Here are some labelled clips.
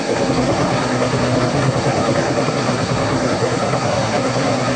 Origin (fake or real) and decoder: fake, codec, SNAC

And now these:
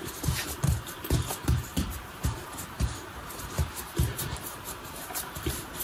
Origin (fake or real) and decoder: fake, vocoder, BigVGAN v2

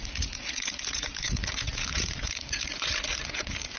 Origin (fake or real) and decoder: fake, vocoder, Vocos